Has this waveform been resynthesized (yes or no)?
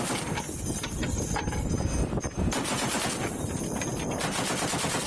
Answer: no